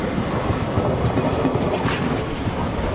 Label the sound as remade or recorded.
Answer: recorded